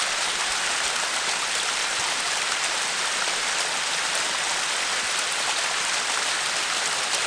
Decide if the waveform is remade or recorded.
recorded